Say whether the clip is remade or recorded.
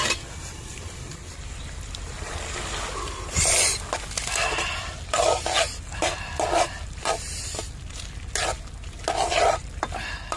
recorded